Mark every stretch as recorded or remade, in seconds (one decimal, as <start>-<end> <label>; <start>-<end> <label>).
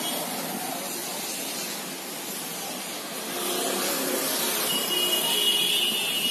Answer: 0.0-6.3 recorded